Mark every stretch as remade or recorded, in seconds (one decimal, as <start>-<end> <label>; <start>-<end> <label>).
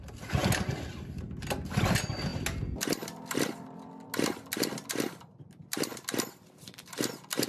0.0-7.5 recorded